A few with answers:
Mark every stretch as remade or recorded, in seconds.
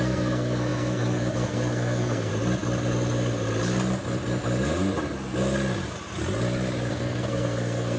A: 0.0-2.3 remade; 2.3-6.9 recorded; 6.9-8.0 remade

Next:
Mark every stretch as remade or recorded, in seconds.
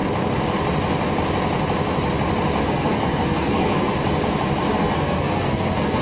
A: 0.0-2.6 recorded; 2.6-3.9 remade; 3.9-4.7 recorded; 4.7-6.0 remade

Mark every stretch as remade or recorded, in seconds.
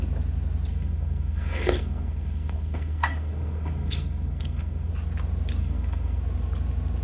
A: 0.0-0.7 recorded; 0.7-4.9 remade; 4.9-5.6 recorded; 5.6-6.2 remade; 6.2-7.0 recorded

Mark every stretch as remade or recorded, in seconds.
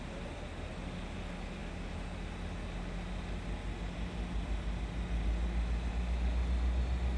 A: 0.0-7.2 recorded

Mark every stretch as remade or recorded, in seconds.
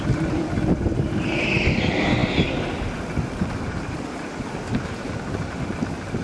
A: 0.0-6.2 recorded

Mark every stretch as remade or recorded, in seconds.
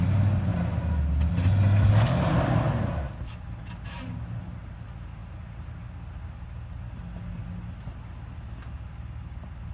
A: 0.0-9.7 recorded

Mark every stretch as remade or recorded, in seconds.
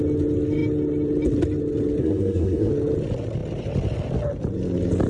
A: 0.0-2.0 recorded; 2.0-2.7 remade; 2.7-5.1 recorded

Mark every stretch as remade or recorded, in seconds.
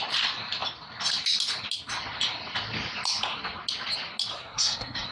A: 0.0-4.3 recorded; 4.3-5.1 remade